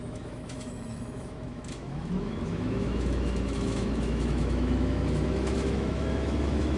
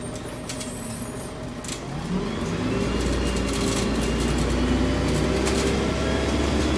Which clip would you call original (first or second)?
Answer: second